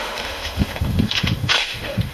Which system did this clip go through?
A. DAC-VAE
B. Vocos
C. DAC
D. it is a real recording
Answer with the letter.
A